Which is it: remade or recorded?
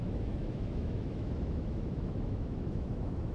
remade